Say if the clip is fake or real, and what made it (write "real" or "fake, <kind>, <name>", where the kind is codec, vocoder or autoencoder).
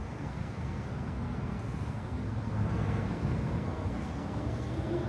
fake, codec, SNAC